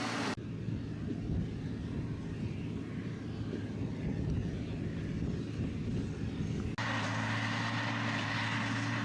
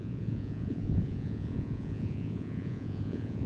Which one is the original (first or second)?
first